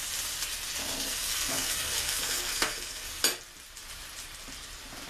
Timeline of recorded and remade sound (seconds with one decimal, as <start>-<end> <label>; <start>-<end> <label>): 0.0-0.8 recorded; 0.8-3.2 remade; 3.2-5.1 recorded